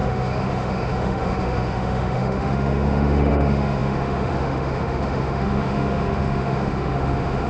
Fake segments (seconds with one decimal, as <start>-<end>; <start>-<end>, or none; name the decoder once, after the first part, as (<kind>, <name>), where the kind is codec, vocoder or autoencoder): 0.0-7.5 (autoencoder, DAC-VAE)